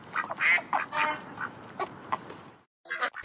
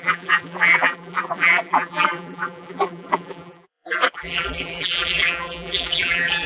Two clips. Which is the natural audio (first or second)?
first